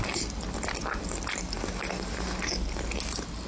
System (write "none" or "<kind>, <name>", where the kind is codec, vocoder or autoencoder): none